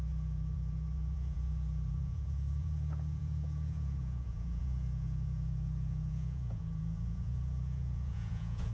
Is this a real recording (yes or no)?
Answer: no